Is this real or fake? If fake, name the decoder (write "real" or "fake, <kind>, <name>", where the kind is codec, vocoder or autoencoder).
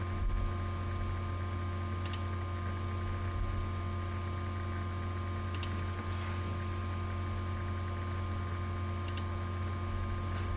real